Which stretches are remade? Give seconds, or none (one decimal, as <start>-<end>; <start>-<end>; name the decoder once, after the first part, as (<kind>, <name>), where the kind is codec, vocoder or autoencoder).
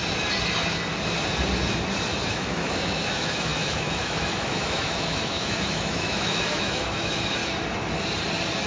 2.3-7.4 (autoencoder, DAC-VAE)